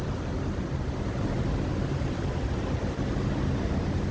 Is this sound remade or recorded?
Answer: recorded